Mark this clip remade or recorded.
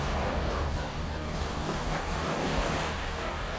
remade